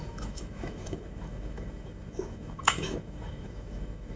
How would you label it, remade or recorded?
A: remade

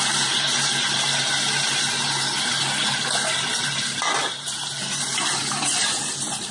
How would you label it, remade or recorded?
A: recorded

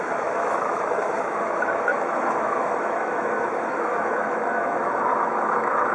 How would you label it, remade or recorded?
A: remade